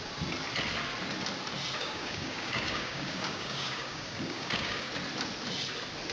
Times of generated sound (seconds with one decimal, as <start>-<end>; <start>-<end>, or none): 1.8-4.9